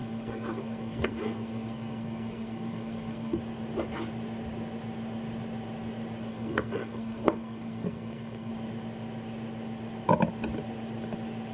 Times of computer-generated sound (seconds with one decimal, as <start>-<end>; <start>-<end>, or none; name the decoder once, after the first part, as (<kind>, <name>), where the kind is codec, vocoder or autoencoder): 0.0-3.4 (codec, SNAC); 6.3-8.5